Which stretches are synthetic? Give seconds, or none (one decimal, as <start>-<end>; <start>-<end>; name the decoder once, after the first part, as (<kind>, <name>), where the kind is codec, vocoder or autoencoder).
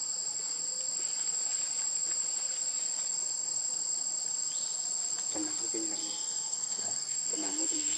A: 6.0-8.0 (codec, SNAC)